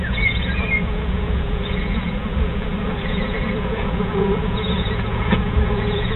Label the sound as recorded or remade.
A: remade